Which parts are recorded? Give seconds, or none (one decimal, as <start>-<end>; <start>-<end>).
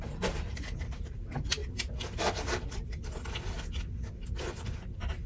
1.6-4.4